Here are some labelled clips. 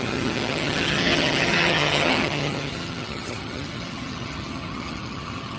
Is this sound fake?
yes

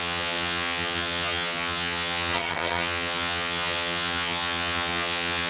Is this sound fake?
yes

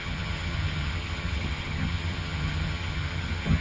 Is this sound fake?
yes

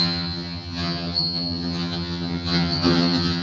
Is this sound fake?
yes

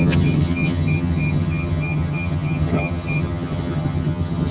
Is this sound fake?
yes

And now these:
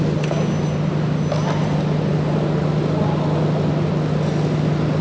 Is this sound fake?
no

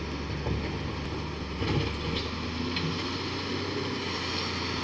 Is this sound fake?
no